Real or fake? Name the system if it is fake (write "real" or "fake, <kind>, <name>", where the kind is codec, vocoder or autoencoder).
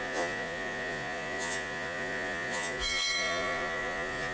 fake, vocoder, Vocos